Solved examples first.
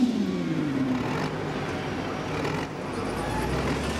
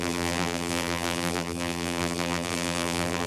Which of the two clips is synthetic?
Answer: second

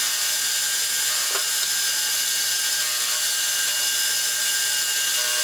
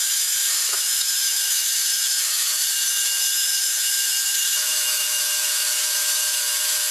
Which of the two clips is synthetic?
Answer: second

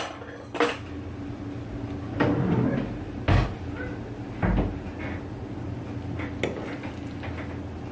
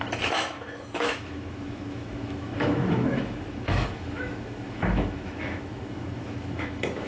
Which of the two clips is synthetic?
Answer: second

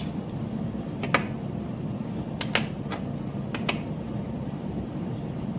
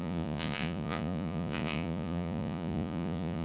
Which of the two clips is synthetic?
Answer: second